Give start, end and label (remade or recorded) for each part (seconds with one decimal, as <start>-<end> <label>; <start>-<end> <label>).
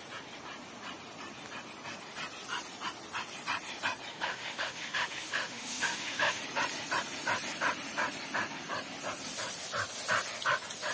0.0-4.1 recorded; 4.1-6.4 remade; 6.4-10.9 recorded